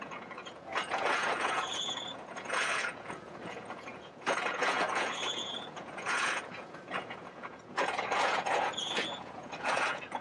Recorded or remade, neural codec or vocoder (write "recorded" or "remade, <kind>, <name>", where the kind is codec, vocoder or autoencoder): remade, vocoder, Vocos